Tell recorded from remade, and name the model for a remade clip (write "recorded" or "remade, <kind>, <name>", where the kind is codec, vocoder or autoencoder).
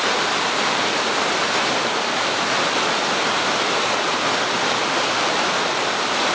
recorded